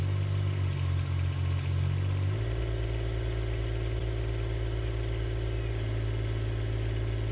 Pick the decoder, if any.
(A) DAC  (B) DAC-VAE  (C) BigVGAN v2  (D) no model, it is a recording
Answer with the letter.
D